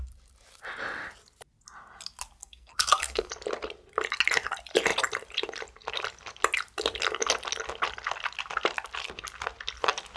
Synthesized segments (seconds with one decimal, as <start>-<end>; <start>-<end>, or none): 2.4-3.3